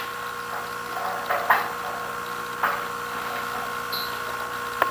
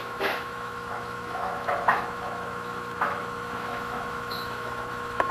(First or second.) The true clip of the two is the first